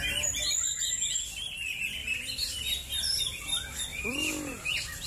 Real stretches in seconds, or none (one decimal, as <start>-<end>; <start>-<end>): 0.0-2.0; 3.2-3.9